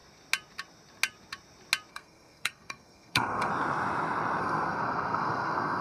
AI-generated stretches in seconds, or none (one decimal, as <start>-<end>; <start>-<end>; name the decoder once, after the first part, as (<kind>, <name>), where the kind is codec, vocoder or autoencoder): 1.9-3.5 (codec, SNAC); 4.4-5.8